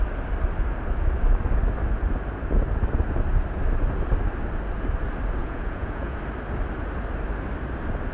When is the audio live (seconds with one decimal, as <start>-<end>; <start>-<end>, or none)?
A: 0.0-5.4; 6.2-8.1